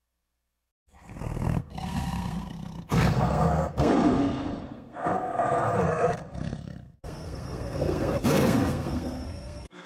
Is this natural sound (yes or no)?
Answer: no